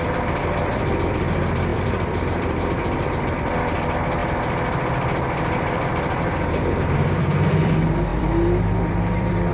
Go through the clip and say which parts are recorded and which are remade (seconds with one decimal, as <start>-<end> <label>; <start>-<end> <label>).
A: 0.0-9.5 remade